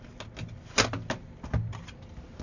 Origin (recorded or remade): recorded